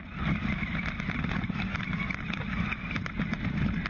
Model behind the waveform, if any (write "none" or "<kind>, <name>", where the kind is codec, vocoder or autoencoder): none